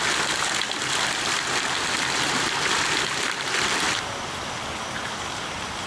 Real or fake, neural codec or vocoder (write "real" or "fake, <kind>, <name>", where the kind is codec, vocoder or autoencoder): real